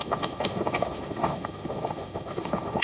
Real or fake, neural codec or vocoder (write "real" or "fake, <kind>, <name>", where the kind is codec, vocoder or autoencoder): fake, autoencoder, DAC-VAE